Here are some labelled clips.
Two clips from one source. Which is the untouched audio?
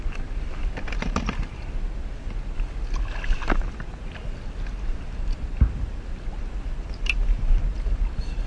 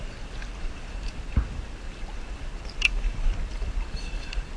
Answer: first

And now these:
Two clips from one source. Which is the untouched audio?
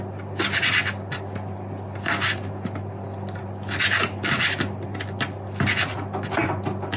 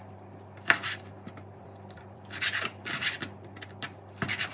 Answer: first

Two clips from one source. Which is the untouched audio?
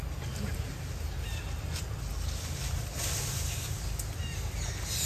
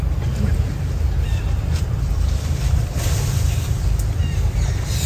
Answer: first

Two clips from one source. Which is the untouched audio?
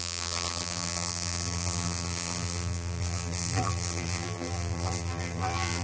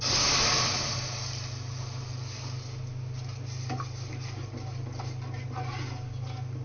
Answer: second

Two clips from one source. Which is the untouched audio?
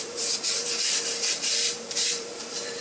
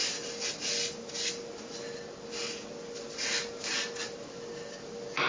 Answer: second